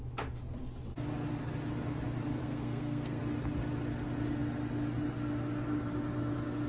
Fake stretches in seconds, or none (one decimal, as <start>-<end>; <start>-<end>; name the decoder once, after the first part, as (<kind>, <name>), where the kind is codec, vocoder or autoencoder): 2.4-3.2 (codec, SNAC)